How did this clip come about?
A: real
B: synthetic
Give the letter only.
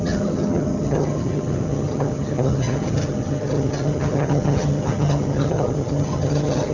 B